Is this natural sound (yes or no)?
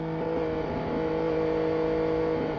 yes